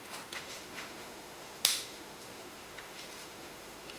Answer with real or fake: fake